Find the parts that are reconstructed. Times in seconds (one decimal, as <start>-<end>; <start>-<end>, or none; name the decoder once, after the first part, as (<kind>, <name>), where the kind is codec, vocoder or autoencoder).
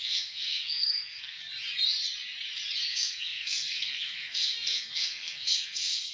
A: 0.0-1.4 (codec, SNAC); 2.9-6.1